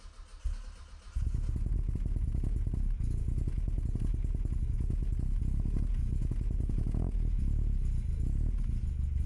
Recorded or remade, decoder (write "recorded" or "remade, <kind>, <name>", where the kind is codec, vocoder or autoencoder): recorded